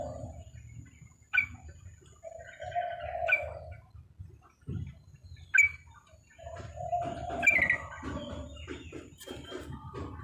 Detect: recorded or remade recorded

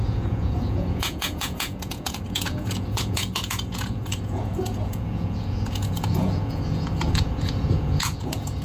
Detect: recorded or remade remade